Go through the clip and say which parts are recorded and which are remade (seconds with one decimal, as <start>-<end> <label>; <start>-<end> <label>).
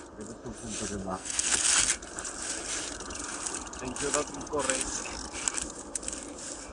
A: 0.0-1.0 recorded; 1.0-1.6 remade; 1.6-6.7 recorded